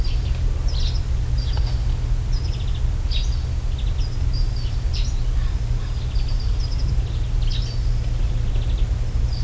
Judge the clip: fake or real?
real